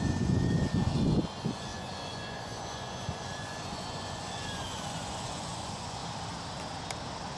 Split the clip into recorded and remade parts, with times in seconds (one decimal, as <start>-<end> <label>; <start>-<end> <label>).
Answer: 0.0-6.0 remade; 6.0-7.4 recorded